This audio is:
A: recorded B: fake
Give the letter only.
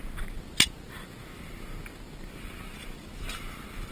A